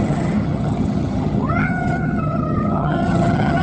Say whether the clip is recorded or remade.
remade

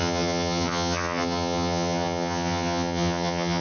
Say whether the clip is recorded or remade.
remade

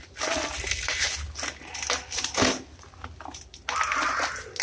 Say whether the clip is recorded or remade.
recorded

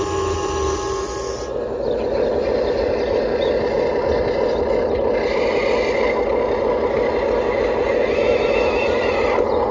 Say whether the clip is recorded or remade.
recorded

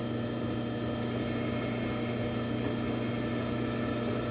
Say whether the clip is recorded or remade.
recorded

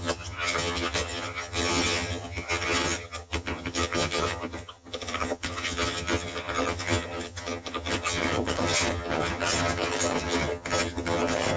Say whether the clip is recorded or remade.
remade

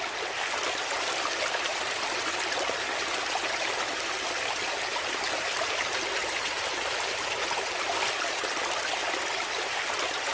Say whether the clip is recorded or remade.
recorded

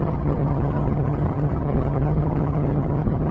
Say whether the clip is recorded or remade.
remade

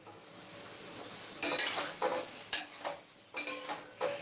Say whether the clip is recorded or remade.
recorded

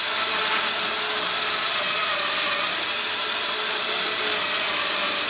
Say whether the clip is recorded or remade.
recorded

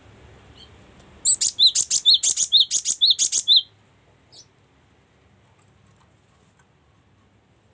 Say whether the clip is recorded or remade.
recorded